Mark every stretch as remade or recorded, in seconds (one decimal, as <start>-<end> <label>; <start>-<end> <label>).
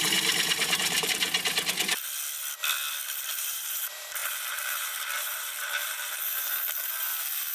0.0-1.3 remade; 1.3-3.3 recorded; 3.3-7.5 remade